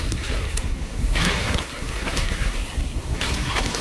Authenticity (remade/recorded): remade